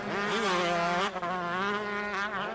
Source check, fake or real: real